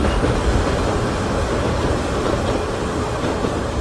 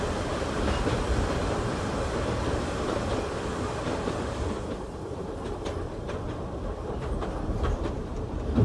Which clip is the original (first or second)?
first